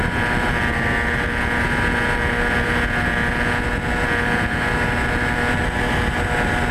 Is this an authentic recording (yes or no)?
yes